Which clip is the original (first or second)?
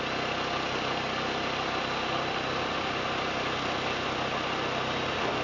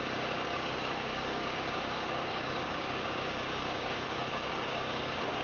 first